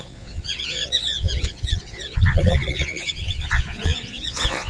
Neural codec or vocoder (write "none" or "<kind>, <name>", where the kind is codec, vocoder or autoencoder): vocoder, Vocos